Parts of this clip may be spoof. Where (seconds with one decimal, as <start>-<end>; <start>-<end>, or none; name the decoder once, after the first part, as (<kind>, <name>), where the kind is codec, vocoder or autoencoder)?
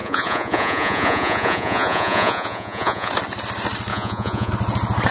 0.0-3.1 (vocoder, Vocos); 3.9-4.5